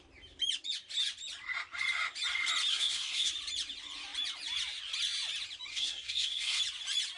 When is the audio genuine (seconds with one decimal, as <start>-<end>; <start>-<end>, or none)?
0.0-2.7; 3.3-5.7; 6.6-7.2

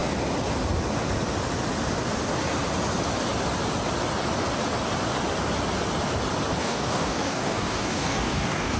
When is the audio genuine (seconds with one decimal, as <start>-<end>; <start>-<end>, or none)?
0.0-6.6

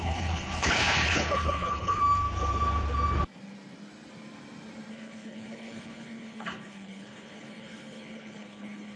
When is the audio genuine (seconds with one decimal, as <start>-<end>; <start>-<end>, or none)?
2.0-4.9

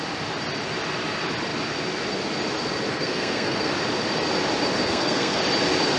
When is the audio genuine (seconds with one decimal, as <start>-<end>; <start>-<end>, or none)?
0.0-2.9; 3.7-4.8; 5.4-6.0

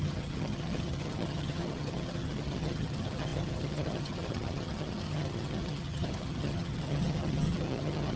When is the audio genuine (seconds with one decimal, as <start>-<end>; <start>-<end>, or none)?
none